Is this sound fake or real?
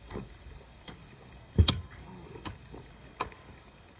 fake